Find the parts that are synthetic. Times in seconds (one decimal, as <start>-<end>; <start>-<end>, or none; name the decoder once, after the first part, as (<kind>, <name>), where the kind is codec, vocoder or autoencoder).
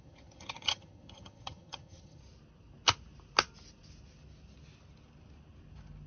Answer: 0.0-2.2 (vocoder, HiFi-GAN)